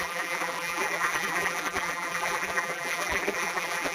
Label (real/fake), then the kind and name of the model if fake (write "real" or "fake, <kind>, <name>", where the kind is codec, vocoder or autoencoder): fake, vocoder, BigVGAN v2